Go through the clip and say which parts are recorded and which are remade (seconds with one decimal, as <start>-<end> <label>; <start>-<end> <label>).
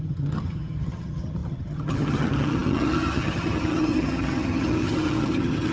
0.0-5.7 remade